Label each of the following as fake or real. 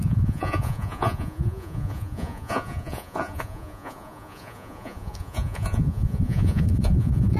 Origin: fake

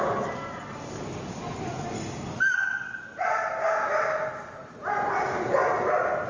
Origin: real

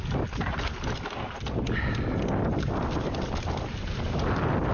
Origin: real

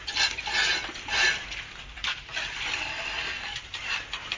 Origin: fake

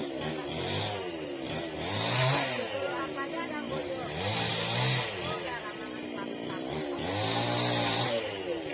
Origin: real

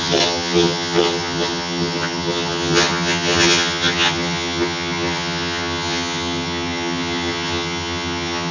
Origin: fake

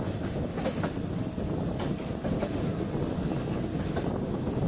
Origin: real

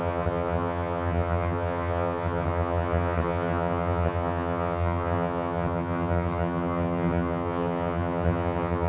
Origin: fake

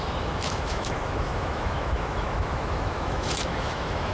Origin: fake